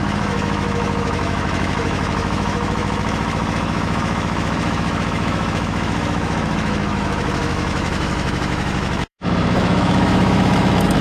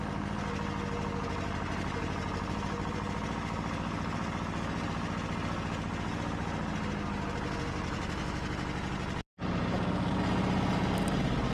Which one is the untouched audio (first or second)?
second